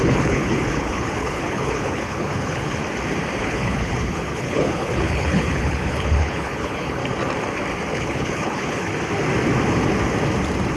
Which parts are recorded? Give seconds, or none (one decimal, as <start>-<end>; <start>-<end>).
2.8-3.4; 7.0-7.9; 8.9-10.8